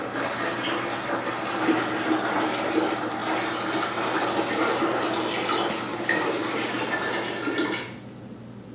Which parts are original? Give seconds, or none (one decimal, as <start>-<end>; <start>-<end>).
0.0-5.9; 6.8-8.7